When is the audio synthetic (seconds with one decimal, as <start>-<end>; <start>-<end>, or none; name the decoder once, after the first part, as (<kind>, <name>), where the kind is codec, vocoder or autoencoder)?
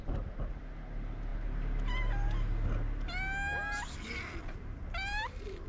none